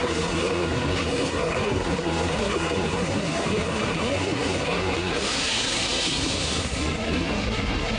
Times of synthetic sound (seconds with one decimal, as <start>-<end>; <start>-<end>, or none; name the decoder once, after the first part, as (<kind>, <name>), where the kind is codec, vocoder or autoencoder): 0.0-8.0 (codec, SNAC)